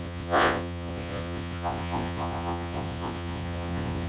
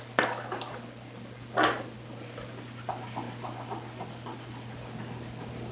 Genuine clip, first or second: second